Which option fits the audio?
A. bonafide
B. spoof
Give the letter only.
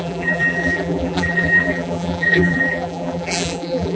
B